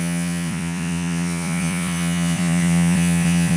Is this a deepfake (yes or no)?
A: yes